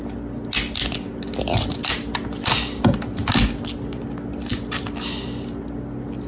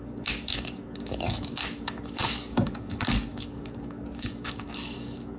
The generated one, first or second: second